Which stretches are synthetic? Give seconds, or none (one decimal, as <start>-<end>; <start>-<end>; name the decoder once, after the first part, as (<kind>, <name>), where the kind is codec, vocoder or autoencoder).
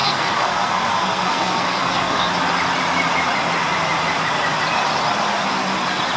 0.0-2.3 (codec, SNAC)